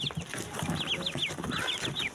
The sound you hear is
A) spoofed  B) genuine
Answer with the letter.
B